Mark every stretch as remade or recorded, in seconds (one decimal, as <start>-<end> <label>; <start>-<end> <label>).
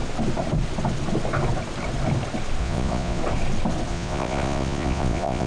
0.0-2.6 recorded; 2.6-3.2 remade; 3.2-3.9 recorded; 3.9-5.5 remade